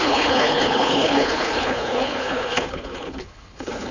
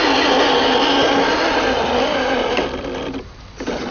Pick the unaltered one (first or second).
second